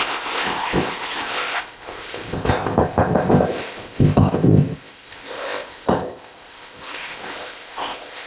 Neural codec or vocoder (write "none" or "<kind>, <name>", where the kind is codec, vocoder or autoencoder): codec, ZipCodec